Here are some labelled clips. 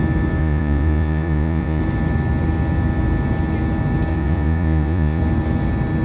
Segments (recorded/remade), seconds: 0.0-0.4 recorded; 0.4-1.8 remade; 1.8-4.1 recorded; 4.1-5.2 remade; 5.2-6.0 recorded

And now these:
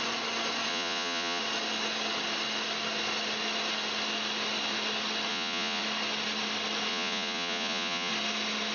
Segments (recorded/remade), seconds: 0.0-0.7 recorded; 0.7-1.4 remade; 1.4-5.3 recorded; 5.3-5.8 remade; 5.8-6.9 recorded; 6.9-8.1 remade; 8.1-8.7 recorded

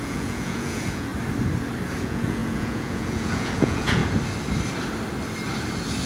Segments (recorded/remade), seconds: 0.0-1.1 remade; 1.1-2.0 recorded; 2.0-4.0 remade; 4.0-6.1 recorded

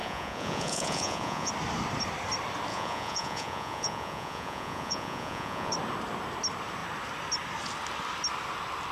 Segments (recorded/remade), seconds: 0.0-1.5 remade; 1.5-2.7 recorded; 2.7-5.7 remade; 5.7-8.9 recorded

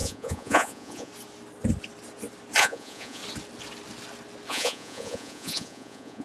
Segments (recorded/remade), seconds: 0.0-1.1 remade; 1.1-2.6 recorded; 2.6-3.2 remade; 3.2-4.5 recorded; 4.5-6.2 remade

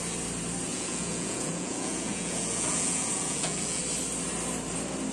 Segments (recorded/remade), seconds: 0.0-0.7 recorded; 0.7-3.8 remade; 3.8-5.1 recorded

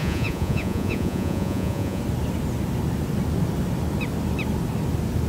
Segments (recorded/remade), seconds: 0.0-2.0 remade; 2.0-5.3 recorded